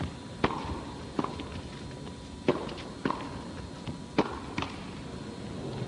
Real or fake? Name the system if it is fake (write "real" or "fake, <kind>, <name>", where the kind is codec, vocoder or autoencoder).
real